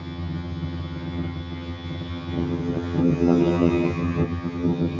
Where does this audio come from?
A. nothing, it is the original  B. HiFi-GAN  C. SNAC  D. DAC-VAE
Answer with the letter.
B